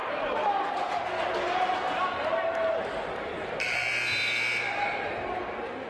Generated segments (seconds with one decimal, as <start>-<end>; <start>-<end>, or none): none